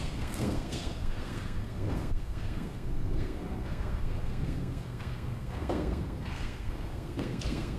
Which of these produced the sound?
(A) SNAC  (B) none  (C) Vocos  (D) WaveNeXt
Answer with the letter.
A